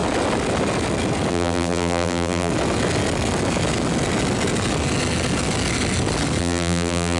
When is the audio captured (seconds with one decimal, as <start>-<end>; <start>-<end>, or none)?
0.0-1.3; 2.5-6.4